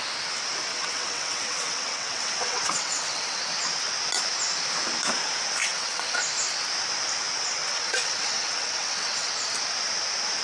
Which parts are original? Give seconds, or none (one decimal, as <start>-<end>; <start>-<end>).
0.0-0.7; 3.4-5.6; 6.2-7.6; 9.3-10.4